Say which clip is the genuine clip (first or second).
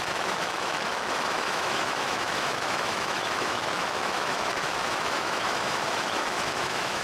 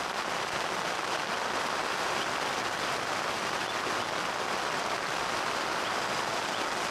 second